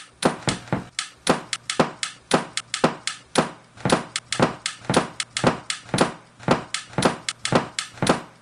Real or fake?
real